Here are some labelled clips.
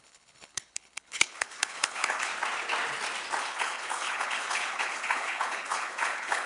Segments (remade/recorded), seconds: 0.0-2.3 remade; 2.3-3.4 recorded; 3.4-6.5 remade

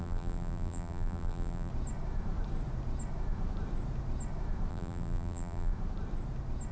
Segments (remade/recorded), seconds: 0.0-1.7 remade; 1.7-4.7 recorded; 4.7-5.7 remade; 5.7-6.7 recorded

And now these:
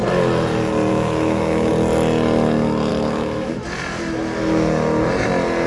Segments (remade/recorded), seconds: 0.0-0.9 recorded; 0.9-1.7 remade; 1.7-2.9 recorded; 2.9-3.5 remade; 3.5-5.7 recorded

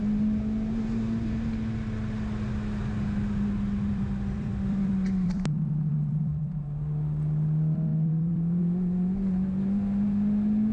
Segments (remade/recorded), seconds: 0.0-3.9 recorded; 3.9-6.4 remade; 6.4-7.9 recorded; 7.9-8.6 remade; 8.6-10.7 recorded